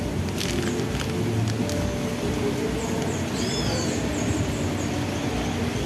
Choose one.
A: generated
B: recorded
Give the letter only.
B